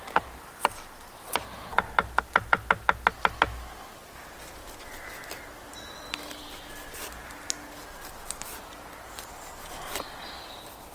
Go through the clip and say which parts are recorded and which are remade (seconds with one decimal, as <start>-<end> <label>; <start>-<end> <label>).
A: 0.0-10.9 recorded